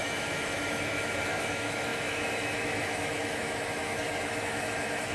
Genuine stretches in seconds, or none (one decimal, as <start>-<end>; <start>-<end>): none